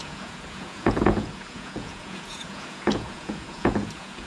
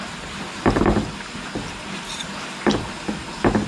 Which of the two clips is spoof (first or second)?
first